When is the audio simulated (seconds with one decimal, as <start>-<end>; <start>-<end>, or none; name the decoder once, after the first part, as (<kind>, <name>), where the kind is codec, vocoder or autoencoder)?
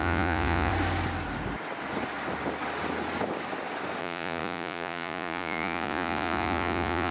0.0-0.7 (vocoder, Vocos); 4.0-7.1